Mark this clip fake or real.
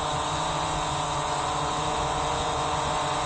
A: fake